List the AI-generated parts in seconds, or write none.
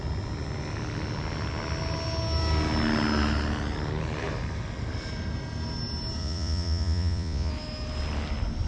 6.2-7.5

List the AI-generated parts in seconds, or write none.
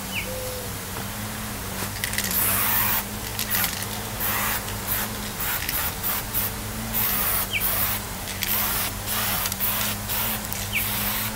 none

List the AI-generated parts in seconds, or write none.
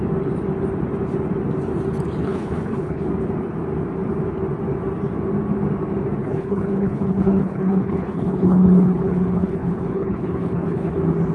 2.2-3.1; 6.2-10.9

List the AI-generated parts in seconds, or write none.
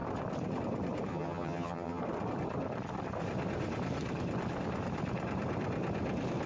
1.1-2.0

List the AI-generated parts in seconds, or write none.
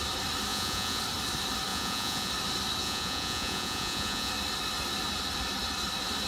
0.5-1.0; 1.7-2.3; 2.8-4.3